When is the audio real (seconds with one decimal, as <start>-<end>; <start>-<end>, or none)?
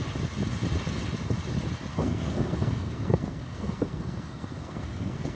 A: 0.0-1.9